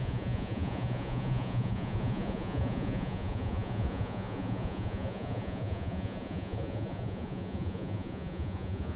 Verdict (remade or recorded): remade